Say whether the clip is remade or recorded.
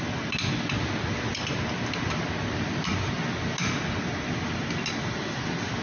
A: recorded